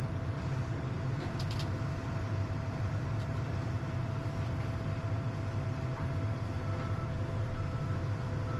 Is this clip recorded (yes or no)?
no